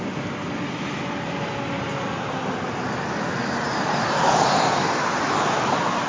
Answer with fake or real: real